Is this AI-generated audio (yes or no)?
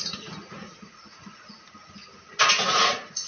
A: yes